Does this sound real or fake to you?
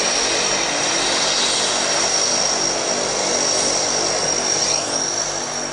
real